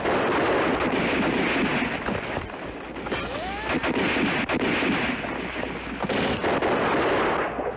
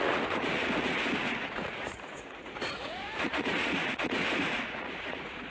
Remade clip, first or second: second